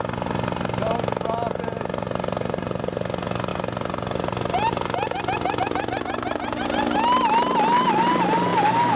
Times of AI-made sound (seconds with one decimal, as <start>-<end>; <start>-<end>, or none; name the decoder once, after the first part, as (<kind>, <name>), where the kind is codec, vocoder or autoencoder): 8.5-9.0 (vocoder, BigVGAN v2)